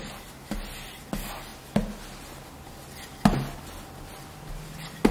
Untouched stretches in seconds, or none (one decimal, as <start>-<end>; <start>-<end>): 0.0-5.1